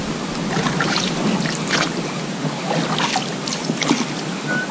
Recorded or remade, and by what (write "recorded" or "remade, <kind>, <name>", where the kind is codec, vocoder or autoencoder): recorded